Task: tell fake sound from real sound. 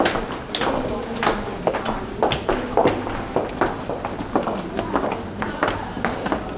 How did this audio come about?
real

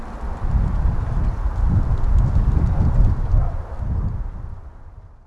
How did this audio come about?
real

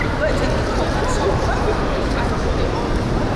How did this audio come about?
fake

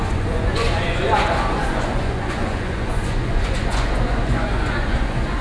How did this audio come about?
fake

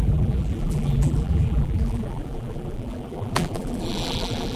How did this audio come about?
fake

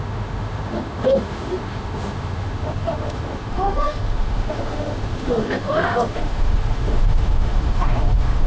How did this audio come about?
fake